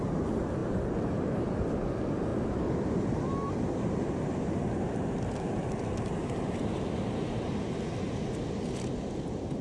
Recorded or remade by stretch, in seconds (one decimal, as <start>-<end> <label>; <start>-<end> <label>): 0.0-9.6 recorded